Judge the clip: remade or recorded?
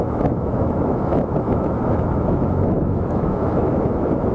remade